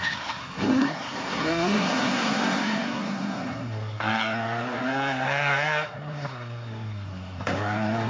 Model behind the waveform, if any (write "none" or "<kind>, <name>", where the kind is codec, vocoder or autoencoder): codec, SNAC